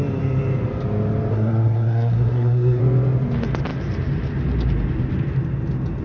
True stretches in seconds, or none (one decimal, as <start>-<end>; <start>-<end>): 0.0-1.3; 2.8-6.0